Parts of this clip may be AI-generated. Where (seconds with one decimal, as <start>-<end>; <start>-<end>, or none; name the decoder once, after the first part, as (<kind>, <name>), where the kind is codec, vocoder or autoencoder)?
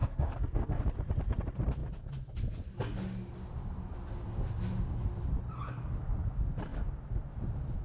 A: 0.0-0.8 (codec, SNAC)